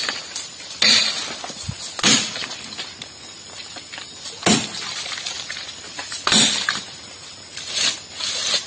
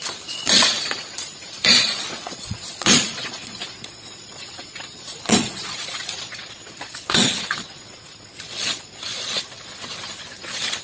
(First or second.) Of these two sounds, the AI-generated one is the second